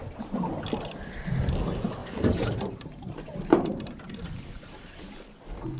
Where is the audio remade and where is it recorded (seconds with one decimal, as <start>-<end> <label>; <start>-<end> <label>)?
0.0-0.5 remade; 0.5-2.0 recorded; 2.0-5.1 remade; 5.1-5.8 recorded